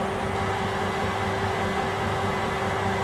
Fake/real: real